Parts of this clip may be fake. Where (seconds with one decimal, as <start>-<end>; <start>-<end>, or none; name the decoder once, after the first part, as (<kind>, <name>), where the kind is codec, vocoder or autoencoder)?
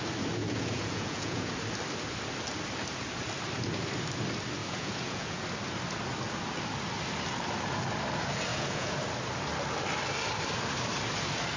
0.4-1.5 (vocoder, Vocos); 4.6-5.4; 8.5-9.0